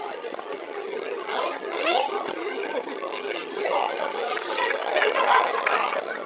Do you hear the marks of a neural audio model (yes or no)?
yes